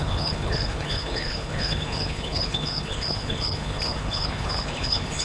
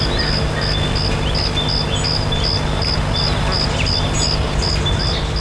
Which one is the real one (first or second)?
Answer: second